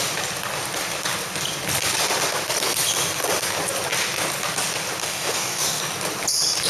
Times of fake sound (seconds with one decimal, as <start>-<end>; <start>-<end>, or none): 5.0-5.8